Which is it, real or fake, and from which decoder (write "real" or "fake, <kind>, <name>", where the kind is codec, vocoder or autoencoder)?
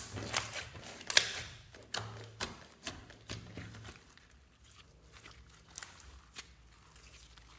real